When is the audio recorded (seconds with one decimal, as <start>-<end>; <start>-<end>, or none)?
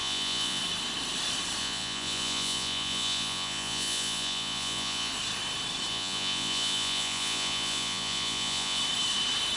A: 0.6-1.6; 5.1-5.9; 8.8-9.6